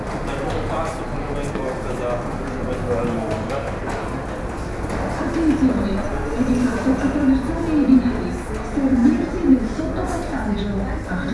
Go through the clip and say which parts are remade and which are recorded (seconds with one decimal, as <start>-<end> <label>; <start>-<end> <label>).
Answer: 0.0-9.0 recorded; 9.0-9.6 remade; 9.6-11.3 recorded